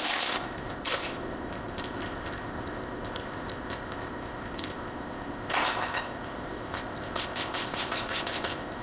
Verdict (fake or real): fake